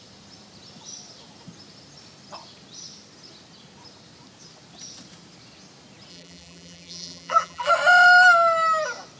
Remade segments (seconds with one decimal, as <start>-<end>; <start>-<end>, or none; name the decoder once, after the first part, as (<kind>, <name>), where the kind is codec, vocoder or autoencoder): 6.1-7.7 (vocoder, BigVGAN v2)